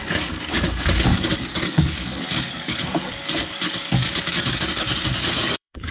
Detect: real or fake fake